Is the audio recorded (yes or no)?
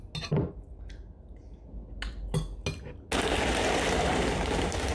yes